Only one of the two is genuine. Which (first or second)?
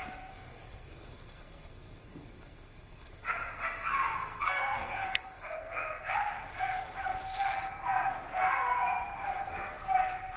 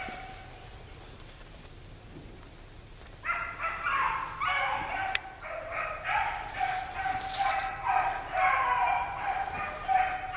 second